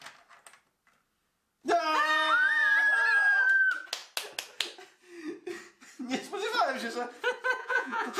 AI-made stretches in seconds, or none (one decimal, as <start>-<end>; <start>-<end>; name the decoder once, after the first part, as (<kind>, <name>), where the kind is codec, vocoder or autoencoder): 7.6-8.2 (vocoder, Vocos)